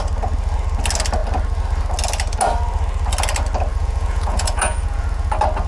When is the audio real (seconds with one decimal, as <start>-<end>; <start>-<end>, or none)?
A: 0.0-3.7; 5.3-5.7